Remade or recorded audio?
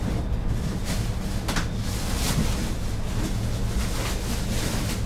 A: recorded